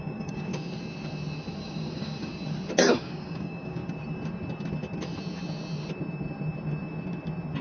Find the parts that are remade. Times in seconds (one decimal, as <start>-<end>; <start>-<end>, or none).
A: 0.0-0.5; 1.6-2.3; 3.0-3.8